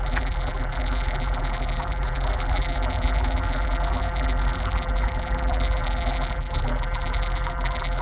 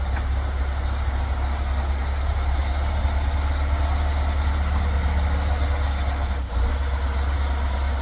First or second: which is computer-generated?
first